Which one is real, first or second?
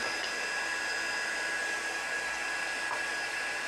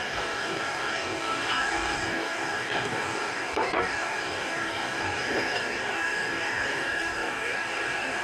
first